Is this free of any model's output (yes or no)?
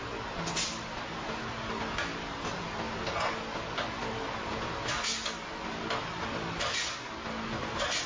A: yes